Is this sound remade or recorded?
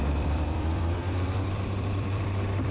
remade